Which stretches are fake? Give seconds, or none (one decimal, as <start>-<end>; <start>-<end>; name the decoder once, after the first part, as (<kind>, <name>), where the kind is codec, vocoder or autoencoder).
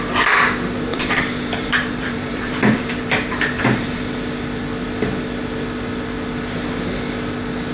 0.9-4.0 (vocoder, BigVGAN v2)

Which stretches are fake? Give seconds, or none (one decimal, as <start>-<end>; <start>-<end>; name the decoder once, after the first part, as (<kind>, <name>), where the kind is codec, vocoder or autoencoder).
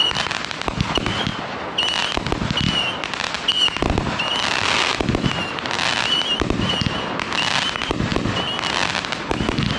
none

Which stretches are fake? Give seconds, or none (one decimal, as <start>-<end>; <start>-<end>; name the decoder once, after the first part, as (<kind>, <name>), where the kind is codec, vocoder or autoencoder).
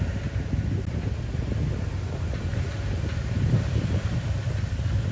none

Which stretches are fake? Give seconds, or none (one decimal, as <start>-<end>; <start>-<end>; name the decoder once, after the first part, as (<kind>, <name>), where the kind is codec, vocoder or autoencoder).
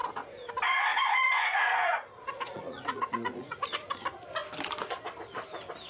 0.0-0.5 (vocoder, Vocos); 0.9-3.9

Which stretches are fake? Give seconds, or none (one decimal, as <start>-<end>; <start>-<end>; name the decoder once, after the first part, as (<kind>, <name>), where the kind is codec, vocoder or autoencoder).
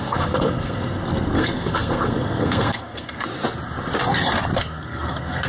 0.0-3.3 (codec, SNAC); 4.6-5.5